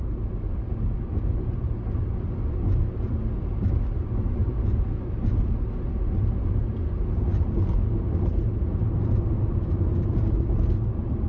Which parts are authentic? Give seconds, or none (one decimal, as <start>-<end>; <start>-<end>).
0.0-11.3